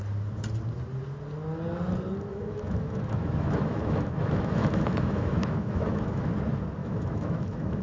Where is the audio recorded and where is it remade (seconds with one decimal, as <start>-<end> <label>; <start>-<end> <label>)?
0.0-2.3 recorded; 2.3-6.3 remade; 6.3-6.8 recorded; 6.8-7.8 remade